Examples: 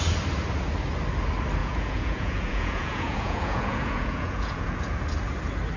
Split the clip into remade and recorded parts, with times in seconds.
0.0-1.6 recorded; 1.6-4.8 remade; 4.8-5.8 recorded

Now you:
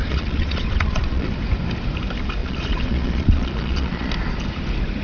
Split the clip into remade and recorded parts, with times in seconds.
0.0-1.3 remade; 1.3-2.4 recorded; 2.4-4.1 remade; 4.1-5.0 recorded

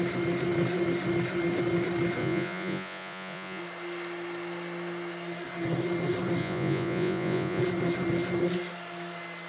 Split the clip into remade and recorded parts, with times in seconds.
0.0-2.2 recorded; 2.2-3.6 remade; 3.6-6.4 recorded; 6.4-7.6 remade; 7.6-9.5 recorded

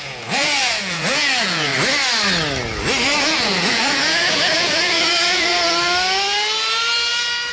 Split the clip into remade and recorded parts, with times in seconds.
0.0-1.7 remade; 1.7-3.2 recorded; 3.2-5.5 remade; 5.5-7.5 recorded